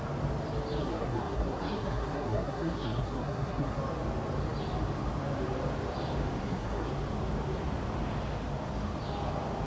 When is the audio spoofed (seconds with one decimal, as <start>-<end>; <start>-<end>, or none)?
0.8-3.8; 6.4-6.9